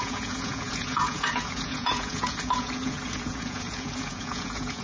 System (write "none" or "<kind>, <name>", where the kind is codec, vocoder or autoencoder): vocoder, Vocos